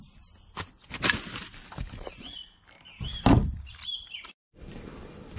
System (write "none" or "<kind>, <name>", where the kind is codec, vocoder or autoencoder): vocoder, BigVGAN v2